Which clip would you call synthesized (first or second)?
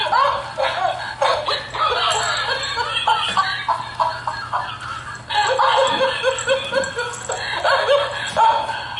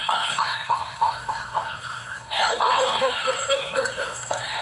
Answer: second